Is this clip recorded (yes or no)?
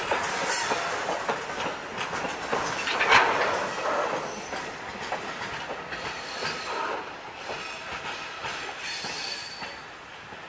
yes